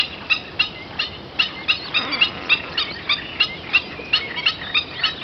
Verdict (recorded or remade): recorded